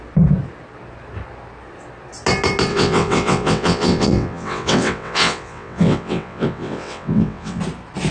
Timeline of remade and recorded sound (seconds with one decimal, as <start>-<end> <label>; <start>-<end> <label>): 0.0-2.7 recorded; 2.7-7.6 remade; 7.6-8.1 recorded